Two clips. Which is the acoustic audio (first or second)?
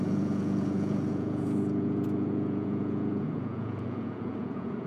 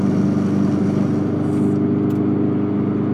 second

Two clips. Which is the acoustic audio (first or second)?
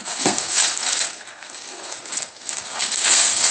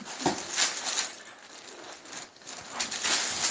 second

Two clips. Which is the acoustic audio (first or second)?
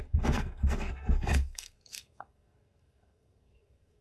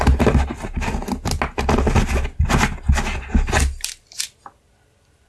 second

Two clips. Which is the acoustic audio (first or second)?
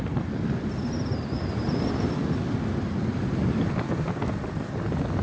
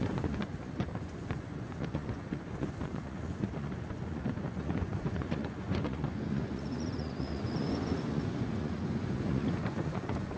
first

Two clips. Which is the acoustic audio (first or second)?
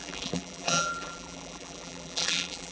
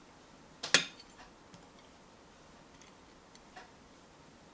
second